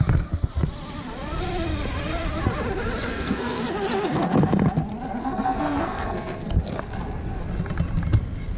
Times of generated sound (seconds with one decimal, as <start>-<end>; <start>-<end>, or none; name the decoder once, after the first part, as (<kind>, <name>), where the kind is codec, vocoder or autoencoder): 3.1-3.6 (codec, SNAC); 5.2-6.6